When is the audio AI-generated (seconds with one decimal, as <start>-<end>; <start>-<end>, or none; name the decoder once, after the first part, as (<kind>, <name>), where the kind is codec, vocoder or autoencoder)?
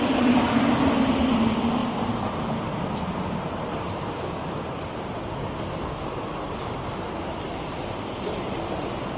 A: none